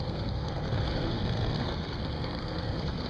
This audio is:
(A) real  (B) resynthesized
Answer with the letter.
B